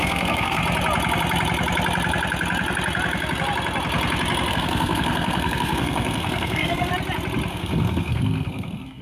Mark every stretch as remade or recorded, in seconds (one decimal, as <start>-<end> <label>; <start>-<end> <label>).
0.0-0.6 remade; 0.6-4.5 recorded; 4.5-6.9 remade; 6.9-7.5 recorded; 7.5-9.0 remade